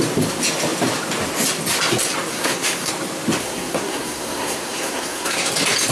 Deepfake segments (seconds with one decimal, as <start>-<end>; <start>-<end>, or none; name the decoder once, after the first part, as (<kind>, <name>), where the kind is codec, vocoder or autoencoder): 2.3-2.9 (codec, SNAC); 3.4-5.5